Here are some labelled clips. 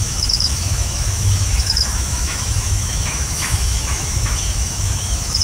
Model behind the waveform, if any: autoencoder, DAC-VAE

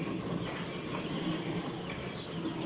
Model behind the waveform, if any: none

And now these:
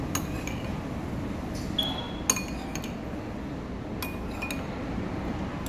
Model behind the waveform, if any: none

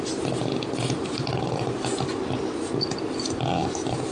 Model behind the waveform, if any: none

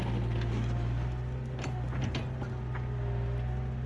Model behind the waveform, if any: none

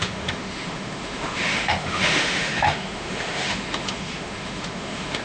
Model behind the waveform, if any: autoencoder, DAC-VAE